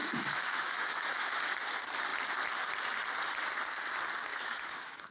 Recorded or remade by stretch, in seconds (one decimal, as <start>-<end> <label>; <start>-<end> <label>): 0.0-1.4 remade; 1.4-4.3 recorded; 4.3-5.1 remade